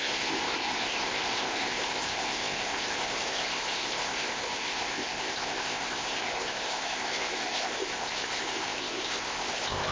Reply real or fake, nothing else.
fake